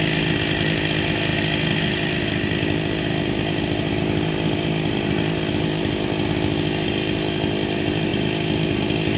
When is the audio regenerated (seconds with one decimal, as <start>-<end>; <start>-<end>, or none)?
none

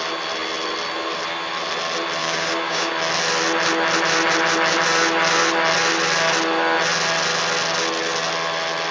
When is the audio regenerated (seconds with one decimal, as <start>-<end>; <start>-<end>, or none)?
2.2-2.9

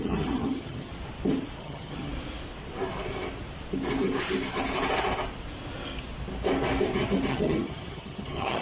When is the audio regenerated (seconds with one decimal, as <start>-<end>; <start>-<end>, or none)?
0.0-0.9; 1.6-2.1; 7.3-8.6

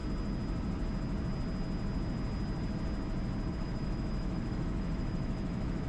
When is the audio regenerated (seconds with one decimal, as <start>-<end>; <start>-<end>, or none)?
3.5-5.9